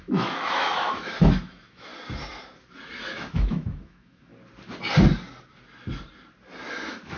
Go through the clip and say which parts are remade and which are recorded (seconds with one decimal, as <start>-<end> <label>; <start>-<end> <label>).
0.0-1.9 remade; 1.9-3.1 recorded; 3.1-4.3 remade; 4.3-6.7 recorded; 6.7-7.2 remade